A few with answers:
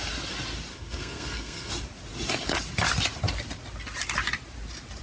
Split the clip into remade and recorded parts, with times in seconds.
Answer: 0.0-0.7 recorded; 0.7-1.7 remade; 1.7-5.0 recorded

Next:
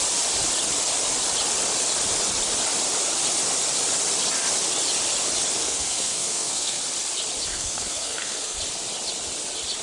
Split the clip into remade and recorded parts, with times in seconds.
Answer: 0.0-5.6 recorded; 5.6-6.8 remade; 6.8-7.5 recorded; 7.5-8.6 remade; 8.6-9.8 recorded

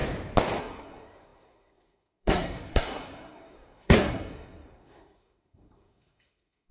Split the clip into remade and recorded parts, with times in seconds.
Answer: 0.0-0.6 recorded; 0.6-6.7 remade